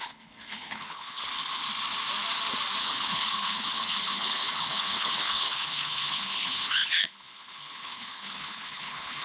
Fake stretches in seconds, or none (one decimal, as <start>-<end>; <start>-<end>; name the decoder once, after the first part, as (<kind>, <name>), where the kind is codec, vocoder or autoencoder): 0.0-1.3 (codec, HILCodec); 2.8-9.2